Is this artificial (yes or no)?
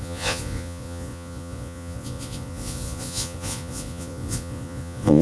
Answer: yes